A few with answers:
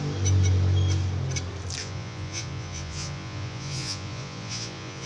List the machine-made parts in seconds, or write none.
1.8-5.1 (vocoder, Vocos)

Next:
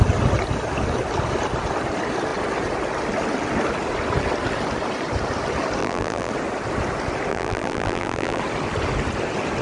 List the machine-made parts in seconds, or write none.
5.8-6.3 (vocoder, BigVGAN v2); 7.3-8.4

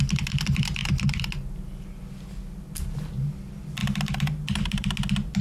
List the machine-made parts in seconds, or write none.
none

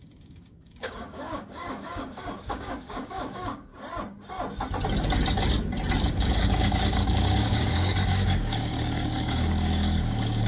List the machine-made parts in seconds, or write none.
0.0-3.7 (codec, DAC); 6.1-10.5

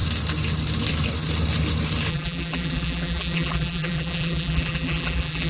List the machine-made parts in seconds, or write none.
2.1-5.5 (vocoder, BigVGAN v2)